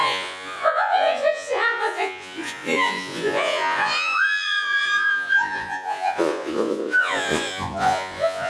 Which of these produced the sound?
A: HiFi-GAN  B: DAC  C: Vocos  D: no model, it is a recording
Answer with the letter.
C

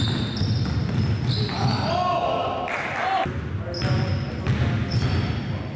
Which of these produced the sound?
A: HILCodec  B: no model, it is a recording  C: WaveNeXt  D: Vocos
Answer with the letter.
B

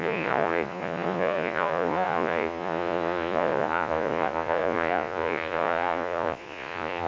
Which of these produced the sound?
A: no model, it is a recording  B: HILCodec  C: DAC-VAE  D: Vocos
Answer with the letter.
D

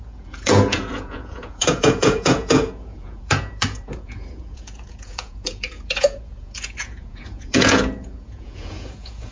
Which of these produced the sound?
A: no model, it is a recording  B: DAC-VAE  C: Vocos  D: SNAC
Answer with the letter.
C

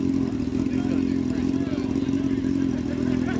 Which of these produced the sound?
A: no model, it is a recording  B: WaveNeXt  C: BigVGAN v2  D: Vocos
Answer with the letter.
A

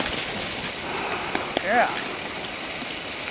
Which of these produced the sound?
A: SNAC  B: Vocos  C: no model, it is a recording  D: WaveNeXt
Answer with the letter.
C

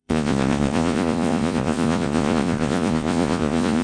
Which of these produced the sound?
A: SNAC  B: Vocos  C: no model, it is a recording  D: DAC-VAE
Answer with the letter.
B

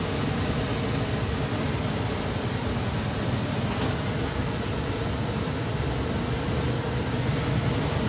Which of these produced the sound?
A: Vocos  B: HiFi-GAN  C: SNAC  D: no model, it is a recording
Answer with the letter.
D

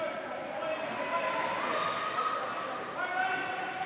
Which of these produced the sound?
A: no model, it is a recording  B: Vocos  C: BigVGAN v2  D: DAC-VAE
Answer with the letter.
A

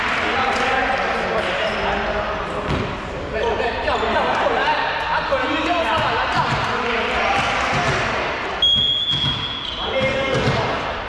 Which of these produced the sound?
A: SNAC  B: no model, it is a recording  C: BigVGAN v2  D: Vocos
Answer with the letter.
B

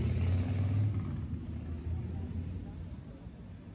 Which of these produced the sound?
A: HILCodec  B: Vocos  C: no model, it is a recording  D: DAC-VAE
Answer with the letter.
C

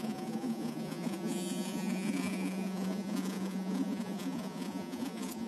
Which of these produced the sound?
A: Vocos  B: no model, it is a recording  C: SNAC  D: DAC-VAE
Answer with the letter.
A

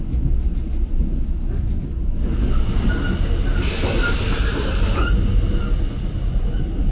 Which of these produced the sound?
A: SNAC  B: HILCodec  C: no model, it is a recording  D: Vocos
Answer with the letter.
C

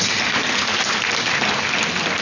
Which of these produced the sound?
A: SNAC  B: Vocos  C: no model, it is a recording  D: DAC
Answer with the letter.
C